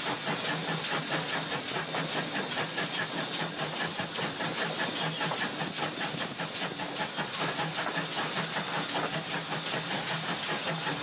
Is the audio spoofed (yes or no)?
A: no